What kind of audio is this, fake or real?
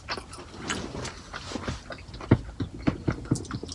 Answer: real